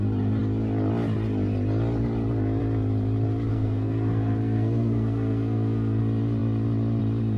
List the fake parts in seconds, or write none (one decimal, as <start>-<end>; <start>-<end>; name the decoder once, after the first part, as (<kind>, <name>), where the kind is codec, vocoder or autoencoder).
3.5-6.0 (codec, SNAC)